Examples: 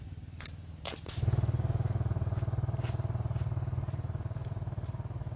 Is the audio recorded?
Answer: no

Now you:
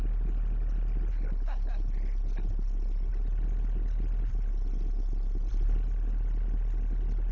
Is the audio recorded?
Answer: yes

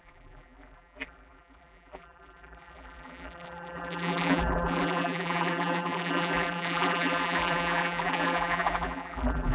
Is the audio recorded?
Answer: no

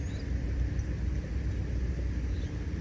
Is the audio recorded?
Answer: yes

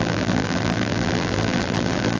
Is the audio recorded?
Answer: no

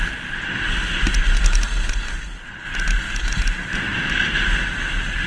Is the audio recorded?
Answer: yes